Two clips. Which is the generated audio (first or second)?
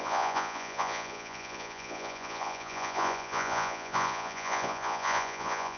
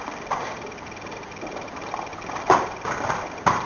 first